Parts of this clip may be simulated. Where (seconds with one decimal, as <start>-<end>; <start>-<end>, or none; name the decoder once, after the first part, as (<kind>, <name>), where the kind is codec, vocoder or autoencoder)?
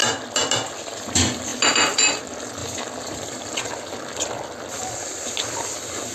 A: none